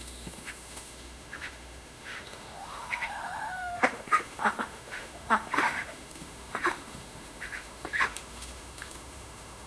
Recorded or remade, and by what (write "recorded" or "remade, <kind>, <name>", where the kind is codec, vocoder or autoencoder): remade, autoencoder, DAC-VAE